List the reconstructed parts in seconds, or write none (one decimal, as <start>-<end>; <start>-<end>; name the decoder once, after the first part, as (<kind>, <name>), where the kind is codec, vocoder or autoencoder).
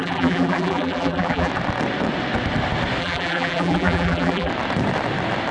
0.0-1.5 (vocoder, BigVGAN v2); 3.0-4.5